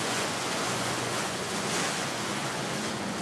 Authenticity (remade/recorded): remade